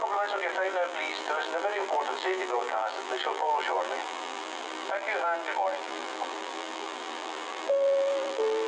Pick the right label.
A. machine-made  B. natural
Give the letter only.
A